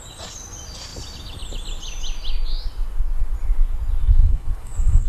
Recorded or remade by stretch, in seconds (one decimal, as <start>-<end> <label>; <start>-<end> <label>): 0.0-4.0 recorded; 4.0-5.1 remade